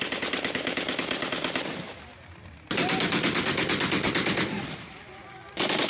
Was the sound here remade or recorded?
recorded